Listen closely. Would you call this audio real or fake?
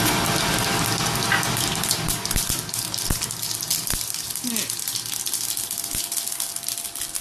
real